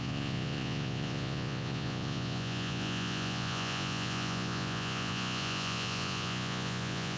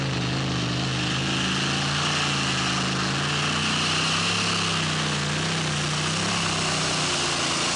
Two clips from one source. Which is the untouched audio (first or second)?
second